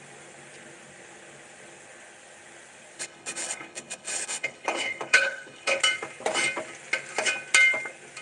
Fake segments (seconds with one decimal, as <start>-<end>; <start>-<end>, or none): 3.0-5.8